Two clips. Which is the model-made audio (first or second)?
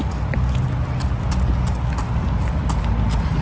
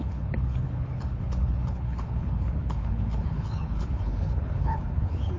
second